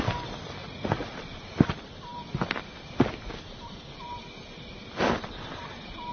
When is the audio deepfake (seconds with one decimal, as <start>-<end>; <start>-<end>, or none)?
0.6-1.2

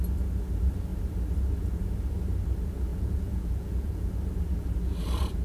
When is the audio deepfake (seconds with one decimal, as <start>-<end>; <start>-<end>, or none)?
2.9-4.1

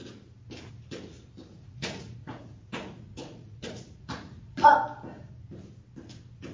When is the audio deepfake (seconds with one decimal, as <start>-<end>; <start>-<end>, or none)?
1.5-4.7

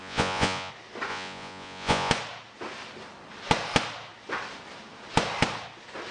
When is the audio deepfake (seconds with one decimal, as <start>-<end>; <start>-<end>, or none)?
0.0-0.7; 1.1-2.1

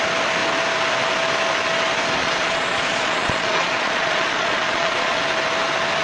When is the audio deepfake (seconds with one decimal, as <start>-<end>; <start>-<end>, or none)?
2.2-5.2

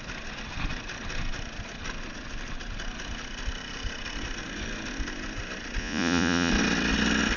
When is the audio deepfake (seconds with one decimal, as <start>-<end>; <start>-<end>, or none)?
5.8-6.5

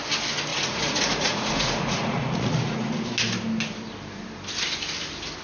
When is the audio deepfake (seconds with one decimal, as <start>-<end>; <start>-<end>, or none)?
0.5-2.9

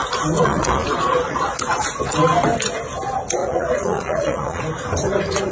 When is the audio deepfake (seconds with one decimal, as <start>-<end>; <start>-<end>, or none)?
0.4-1.6; 3.4-4.6